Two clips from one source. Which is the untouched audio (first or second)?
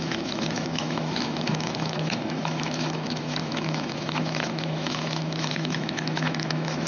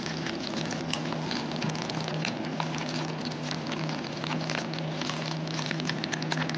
second